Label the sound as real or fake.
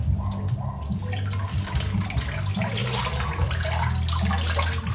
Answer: real